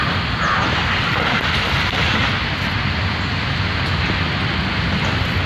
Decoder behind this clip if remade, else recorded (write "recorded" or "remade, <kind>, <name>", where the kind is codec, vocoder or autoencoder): recorded